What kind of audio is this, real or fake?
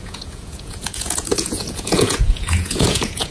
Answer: fake